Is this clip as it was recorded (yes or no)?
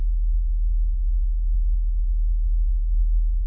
no